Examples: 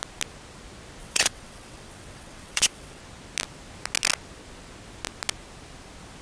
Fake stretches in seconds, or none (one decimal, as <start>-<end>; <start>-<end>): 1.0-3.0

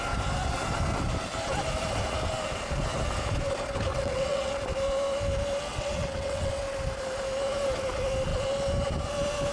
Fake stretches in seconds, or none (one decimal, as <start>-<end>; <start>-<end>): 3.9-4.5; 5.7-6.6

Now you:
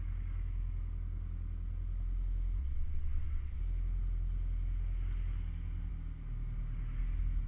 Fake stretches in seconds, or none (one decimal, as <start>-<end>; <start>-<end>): 2.6-3.6